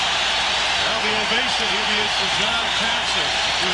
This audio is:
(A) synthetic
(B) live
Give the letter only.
A